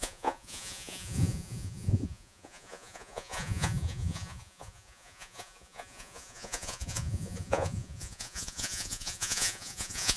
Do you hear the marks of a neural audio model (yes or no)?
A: yes